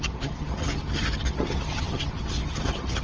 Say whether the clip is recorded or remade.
remade